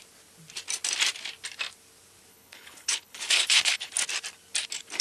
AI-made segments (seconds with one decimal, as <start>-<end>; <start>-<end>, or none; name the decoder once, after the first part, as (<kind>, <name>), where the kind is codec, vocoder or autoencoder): 2.3-3.9 (codec, HILCodec)